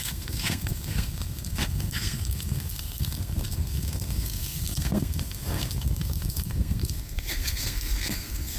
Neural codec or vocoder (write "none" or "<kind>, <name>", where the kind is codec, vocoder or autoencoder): codec, SNAC